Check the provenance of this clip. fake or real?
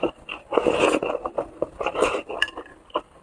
real